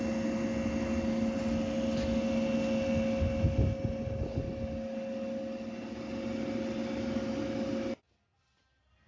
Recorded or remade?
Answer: recorded